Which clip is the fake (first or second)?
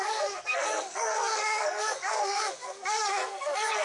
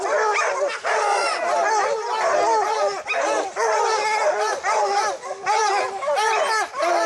first